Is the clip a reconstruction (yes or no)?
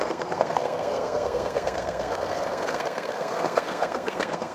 yes